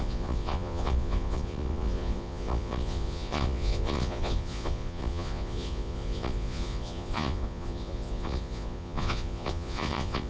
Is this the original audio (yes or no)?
no